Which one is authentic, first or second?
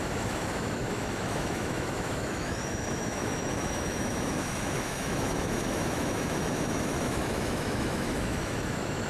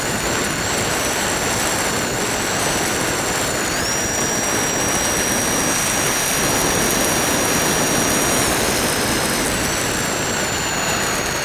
second